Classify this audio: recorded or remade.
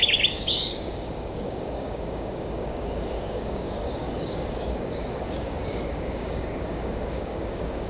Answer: remade